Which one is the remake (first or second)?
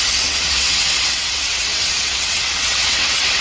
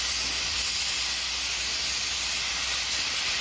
first